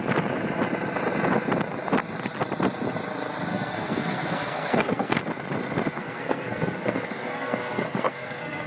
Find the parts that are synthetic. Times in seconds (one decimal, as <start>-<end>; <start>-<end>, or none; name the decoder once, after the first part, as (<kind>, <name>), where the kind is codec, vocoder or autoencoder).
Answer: 3.5-5.2 (codec, SNAC); 6.0-8.7